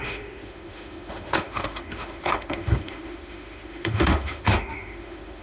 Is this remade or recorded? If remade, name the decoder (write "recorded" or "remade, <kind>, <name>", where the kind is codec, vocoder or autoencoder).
remade, autoencoder, DAC-VAE